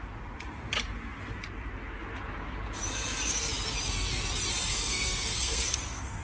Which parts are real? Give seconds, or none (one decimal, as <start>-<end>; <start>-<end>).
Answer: 0.0-4.7

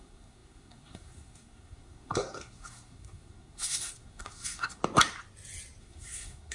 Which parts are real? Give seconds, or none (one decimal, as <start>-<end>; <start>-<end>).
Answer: 4.8-5.8